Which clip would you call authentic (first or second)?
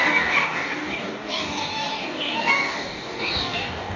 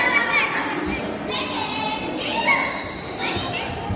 second